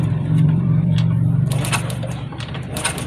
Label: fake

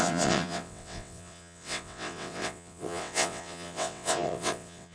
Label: fake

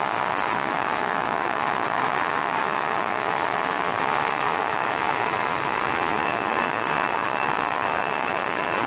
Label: fake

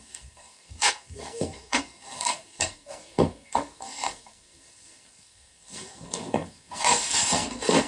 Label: fake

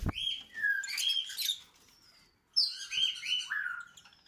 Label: real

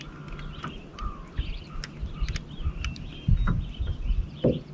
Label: real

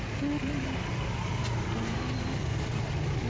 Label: real